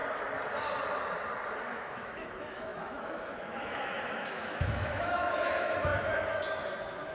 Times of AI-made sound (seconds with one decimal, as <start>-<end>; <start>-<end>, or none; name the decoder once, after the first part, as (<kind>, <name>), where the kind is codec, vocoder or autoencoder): 1.7-7.1 (autoencoder, DAC-VAE)